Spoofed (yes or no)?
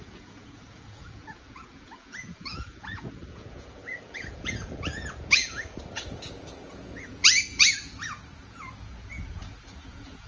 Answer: yes